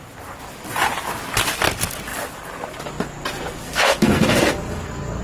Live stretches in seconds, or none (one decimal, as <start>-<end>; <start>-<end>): 0.0-3.6